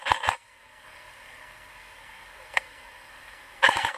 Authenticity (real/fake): fake